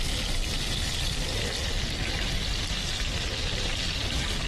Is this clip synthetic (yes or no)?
no